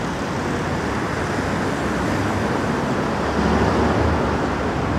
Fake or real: real